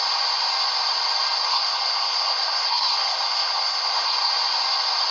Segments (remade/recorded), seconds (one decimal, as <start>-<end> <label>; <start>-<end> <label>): 0.0-1.4 recorded; 1.4-4.3 remade; 4.3-5.1 recorded